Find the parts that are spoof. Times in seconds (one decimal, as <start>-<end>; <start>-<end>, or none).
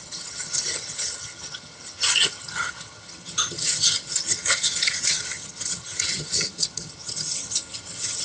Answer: 0.0-8.2